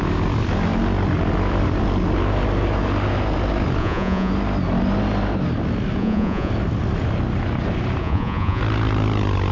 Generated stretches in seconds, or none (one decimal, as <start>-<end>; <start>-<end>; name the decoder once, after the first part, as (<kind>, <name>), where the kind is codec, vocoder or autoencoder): 3.8-4.3 (vocoder, Vocos); 6.0-6.5; 8.0-8.6